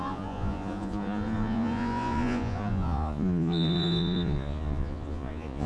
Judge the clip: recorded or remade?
remade